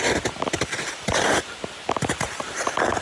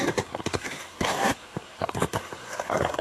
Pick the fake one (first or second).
second